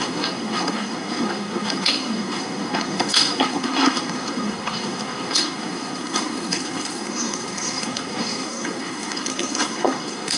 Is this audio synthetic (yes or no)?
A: yes